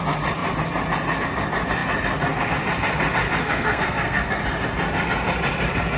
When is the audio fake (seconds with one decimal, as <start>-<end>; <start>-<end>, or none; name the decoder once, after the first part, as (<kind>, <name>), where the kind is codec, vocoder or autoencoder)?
3.4-4.4 (codec, SNAC)